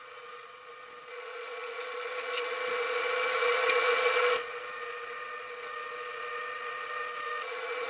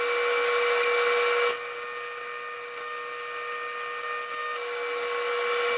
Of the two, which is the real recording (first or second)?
second